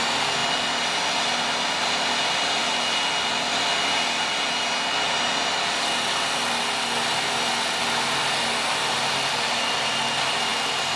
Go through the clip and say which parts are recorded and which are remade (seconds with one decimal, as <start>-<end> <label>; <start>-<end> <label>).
0.0-11.0 recorded